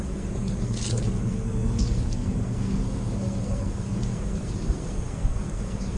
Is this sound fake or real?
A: fake